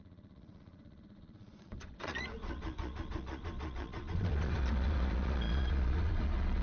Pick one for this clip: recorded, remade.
remade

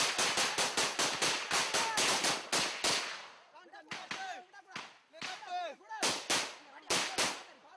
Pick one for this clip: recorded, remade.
recorded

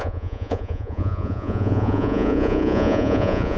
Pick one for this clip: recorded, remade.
remade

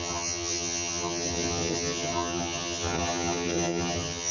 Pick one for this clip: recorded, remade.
remade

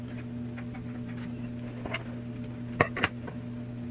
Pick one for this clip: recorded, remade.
recorded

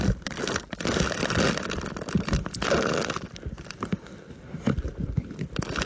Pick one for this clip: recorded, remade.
remade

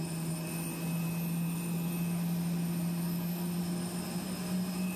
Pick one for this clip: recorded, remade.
recorded